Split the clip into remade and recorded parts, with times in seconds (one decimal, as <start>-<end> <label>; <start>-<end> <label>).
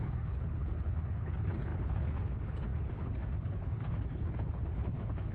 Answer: 0.0-5.3 remade